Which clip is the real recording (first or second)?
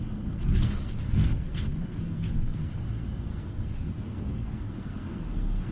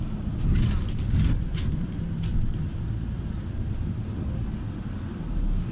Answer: second